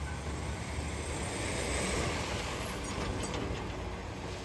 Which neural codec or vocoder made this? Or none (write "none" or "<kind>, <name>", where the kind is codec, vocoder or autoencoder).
vocoder, BigVGAN v2